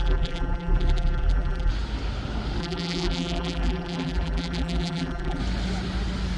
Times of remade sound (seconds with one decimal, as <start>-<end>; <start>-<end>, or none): 0.0-1.7; 2.6-5.4